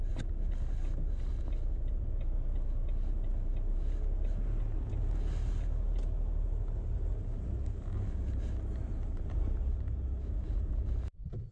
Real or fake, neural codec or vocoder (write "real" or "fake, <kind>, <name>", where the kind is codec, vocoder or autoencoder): real